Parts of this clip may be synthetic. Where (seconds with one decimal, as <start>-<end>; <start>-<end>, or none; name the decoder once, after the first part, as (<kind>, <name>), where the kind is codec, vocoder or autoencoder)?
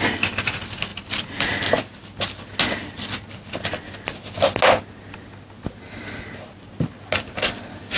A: none